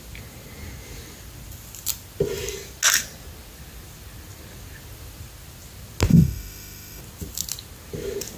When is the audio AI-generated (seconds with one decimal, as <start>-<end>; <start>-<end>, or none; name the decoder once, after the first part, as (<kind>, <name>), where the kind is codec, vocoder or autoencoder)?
6.1-7.0 (autoencoder, DAC-VAE)

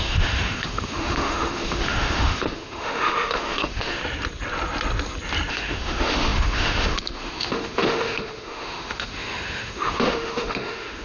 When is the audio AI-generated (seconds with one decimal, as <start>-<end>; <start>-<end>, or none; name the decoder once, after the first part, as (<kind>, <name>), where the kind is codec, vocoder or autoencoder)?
0.0-4.0 (autoencoder, DAC-VAE); 5.5-11.0

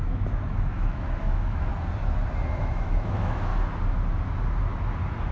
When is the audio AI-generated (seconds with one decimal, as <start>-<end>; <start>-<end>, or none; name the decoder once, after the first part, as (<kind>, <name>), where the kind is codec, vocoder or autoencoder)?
0.0-1.7 (autoencoder, DAC-VAE); 2.5-3.5

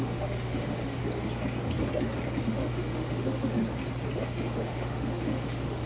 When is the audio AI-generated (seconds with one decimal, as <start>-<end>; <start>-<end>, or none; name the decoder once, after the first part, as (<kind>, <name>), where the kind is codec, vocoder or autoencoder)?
0.0-1.0 (autoencoder, DAC-VAE); 2.4-3.6; 4.2-5.9

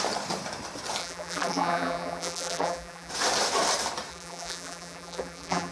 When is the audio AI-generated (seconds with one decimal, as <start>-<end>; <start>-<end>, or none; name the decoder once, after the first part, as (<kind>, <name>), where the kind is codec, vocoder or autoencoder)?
1.0-3.1 (vocoder, BigVGAN v2); 4.1-5.7

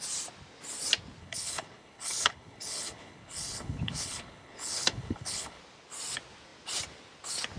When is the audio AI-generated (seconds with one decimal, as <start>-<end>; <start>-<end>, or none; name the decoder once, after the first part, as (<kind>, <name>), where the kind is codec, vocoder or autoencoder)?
1.2-5.6 (codec, HILCodec)